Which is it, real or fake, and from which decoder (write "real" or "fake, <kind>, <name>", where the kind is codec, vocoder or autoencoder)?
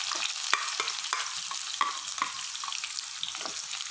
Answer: real